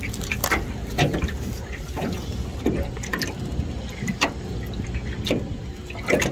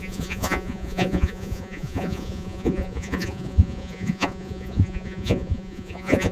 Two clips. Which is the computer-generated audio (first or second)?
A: second